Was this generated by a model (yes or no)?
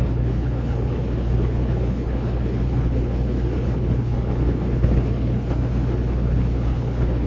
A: yes